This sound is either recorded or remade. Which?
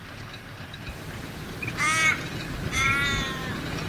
recorded